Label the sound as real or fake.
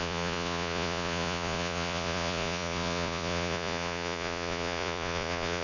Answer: fake